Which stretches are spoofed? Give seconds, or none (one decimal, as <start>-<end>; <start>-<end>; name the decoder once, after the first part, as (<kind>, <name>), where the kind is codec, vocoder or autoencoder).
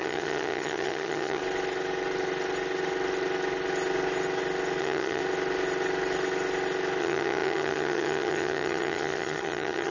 0.0-1.4 (vocoder, HiFi-GAN); 4.8-5.2; 7.0-9.9